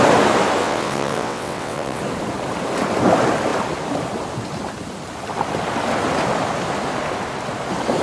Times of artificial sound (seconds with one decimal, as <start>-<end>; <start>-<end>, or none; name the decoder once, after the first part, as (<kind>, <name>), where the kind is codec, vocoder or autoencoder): 0.6-2.0 (vocoder, WaveNeXt)